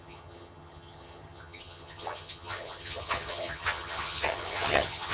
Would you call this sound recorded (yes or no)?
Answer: no